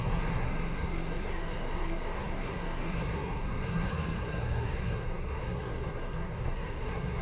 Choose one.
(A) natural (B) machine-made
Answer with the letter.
B